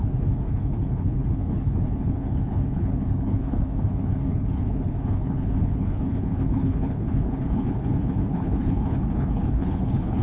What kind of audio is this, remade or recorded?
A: remade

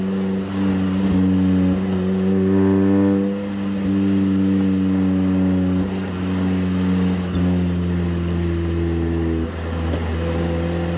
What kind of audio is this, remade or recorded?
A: recorded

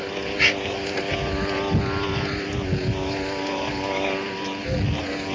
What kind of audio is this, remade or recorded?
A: recorded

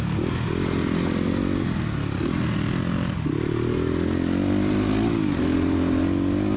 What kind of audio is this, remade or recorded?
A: recorded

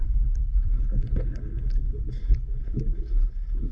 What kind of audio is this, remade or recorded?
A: remade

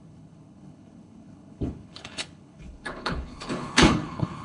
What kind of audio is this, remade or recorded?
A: remade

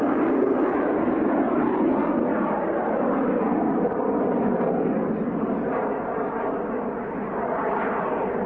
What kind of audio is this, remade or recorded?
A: recorded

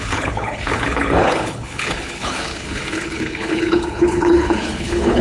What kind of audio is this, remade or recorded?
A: remade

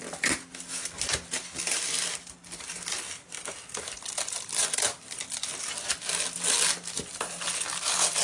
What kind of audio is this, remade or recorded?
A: recorded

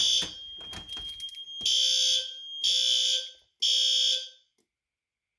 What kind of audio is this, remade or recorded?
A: recorded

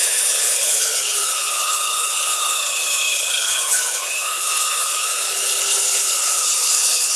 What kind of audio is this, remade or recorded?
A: remade